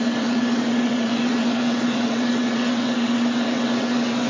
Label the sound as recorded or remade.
remade